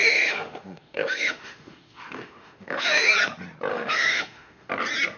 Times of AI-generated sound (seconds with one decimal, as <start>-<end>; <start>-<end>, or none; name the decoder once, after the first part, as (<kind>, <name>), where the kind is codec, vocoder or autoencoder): 0.0-3.1 (autoencoder, DAC-VAE); 3.7-4.7